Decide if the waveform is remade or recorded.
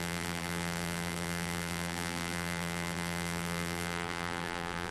remade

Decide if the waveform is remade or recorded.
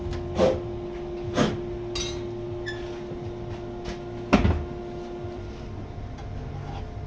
recorded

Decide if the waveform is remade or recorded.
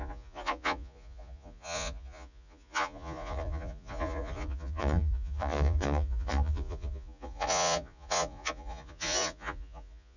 remade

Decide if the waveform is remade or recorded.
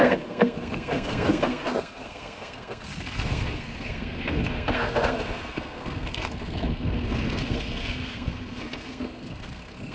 remade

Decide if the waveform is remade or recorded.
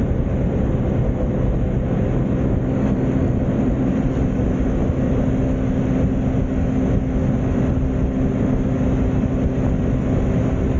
recorded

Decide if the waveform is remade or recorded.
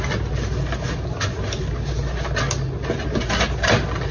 recorded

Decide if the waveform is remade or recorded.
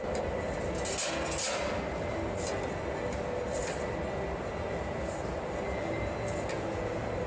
recorded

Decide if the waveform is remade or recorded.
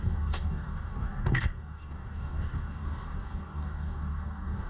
remade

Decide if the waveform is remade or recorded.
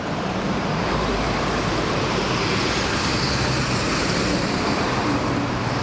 remade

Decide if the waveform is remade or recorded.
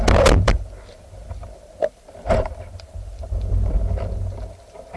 remade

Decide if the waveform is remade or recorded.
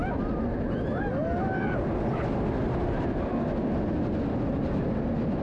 recorded